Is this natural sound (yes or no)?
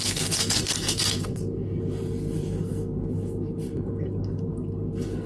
no